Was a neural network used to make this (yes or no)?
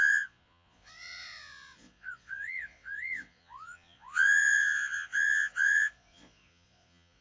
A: yes